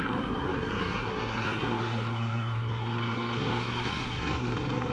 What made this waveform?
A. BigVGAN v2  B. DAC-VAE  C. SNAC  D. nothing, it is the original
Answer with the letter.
C